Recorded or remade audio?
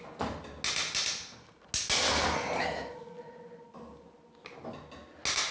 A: recorded